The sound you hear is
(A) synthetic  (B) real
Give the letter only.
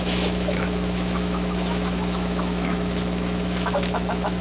A